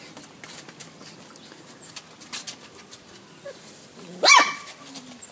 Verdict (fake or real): real